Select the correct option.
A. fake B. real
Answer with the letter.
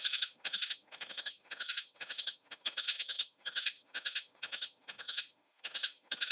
A